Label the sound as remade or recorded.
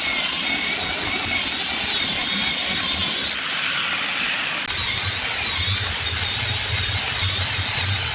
recorded